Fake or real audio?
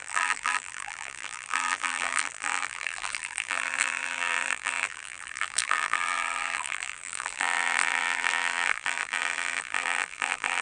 fake